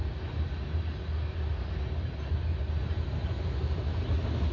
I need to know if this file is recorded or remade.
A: recorded